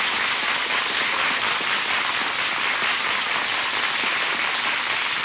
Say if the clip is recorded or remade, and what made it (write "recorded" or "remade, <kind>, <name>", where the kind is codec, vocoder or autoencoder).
recorded